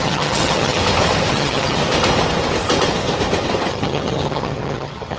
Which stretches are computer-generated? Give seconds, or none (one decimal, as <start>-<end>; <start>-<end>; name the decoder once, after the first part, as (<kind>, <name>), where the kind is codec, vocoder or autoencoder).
0.0-0.8 (vocoder, HiFi-GAN); 1.3-1.8; 3.7-5.2